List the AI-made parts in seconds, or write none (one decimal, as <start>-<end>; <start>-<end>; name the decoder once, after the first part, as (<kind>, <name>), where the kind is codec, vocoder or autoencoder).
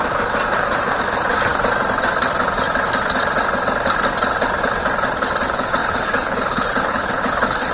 5.8-7.7 (codec, HILCodec)